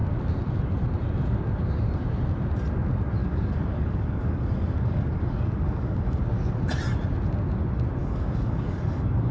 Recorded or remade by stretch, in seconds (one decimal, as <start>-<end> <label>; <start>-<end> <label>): 0.0-3.2 recorded; 3.2-6.2 remade; 6.2-8.0 recorded; 8.0-9.3 remade